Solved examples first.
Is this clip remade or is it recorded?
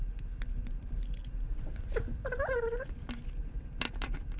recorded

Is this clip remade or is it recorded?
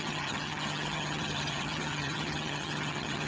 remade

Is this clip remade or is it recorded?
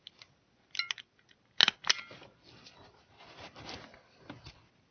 recorded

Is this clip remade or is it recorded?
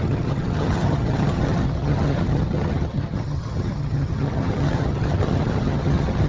remade